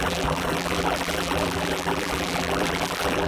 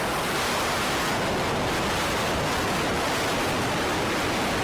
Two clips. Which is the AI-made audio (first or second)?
first